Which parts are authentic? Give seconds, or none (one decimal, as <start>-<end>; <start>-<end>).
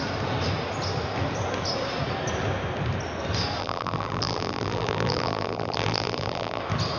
0.0-3.6; 6.6-7.0